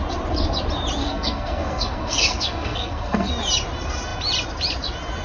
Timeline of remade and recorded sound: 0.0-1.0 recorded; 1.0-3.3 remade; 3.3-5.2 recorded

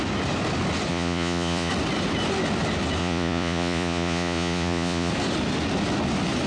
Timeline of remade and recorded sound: 0.0-0.9 recorded; 0.9-1.7 remade; 1.7-3.0 recorded; 3.0-5.1 remade; 5.1-6.5 recorded

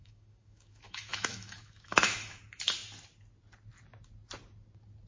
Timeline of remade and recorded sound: 0.0-2.4 remade; 2.4-5.1 recorded